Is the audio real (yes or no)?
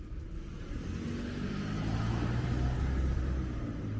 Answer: yes